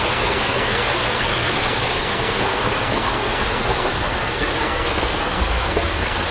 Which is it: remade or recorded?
remade